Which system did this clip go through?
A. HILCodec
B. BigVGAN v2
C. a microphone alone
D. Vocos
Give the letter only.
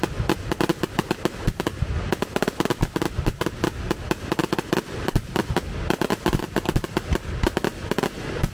C